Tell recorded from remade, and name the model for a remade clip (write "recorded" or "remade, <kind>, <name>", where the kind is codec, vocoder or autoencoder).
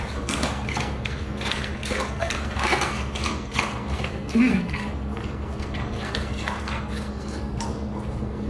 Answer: remade, codec, SNAC